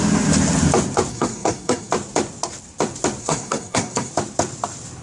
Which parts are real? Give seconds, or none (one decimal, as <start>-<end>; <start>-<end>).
0.0-1.1; 1.9-3.2; 4.1-5.0